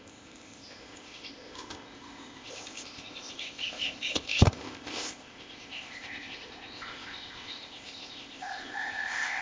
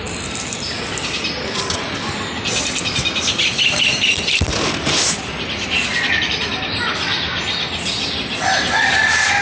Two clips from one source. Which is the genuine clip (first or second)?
second